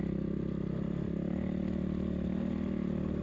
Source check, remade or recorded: recorded